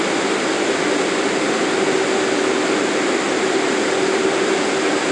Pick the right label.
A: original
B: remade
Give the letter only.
A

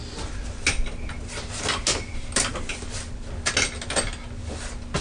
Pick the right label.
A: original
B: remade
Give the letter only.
A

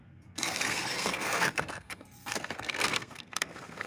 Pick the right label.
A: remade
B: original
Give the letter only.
A